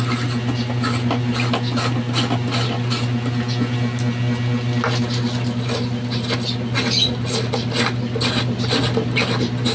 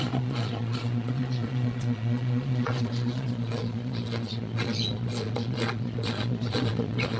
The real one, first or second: first